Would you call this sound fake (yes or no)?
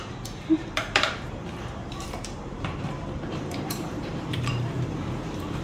yes